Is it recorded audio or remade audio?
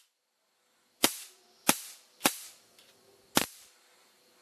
recorded